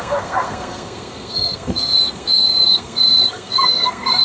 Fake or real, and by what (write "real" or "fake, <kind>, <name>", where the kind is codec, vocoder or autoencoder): fake, codec, SNAC